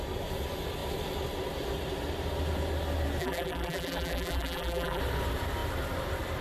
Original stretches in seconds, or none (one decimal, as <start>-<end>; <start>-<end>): 0.0-3.2; 5.0-6.4